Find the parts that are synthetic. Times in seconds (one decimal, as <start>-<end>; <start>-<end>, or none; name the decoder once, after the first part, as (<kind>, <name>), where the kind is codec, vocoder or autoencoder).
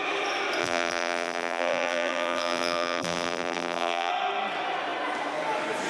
0.6-4.1 (vocoder, BigVGAN v2)